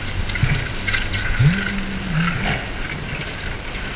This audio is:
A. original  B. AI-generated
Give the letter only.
A